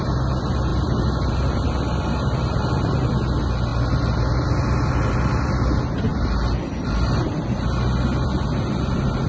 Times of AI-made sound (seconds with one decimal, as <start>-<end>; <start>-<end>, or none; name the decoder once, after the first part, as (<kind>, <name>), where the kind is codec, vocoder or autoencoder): none